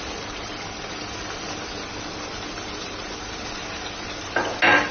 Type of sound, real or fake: real